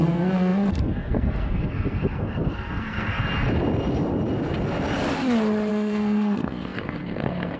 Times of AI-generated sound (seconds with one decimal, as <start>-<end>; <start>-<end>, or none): 0.0-3.2; 5.7-7.6